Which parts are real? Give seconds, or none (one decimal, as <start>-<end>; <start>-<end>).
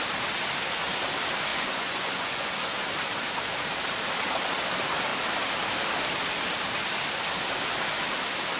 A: 0.0-1.5; 2.5-8.6